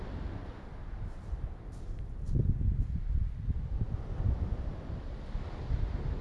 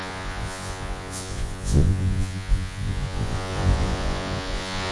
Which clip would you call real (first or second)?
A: first